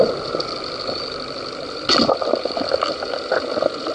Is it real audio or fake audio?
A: real